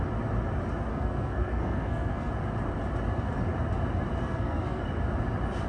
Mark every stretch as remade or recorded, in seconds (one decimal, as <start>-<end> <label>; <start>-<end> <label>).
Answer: 0.0-0.9 recorded; 0.9-2.3 remade; 2.3-4.2 recorded; 4.2-4.8 remade; 4.8-5.7 recorded